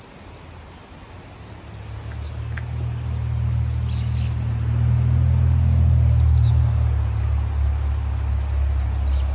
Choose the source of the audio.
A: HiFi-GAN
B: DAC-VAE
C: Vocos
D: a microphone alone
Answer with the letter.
D